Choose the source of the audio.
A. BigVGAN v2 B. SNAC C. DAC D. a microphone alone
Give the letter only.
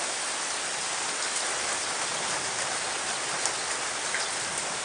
D